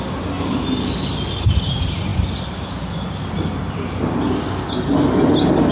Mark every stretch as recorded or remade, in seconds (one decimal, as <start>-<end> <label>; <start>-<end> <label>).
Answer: 0.0-5.7 recorded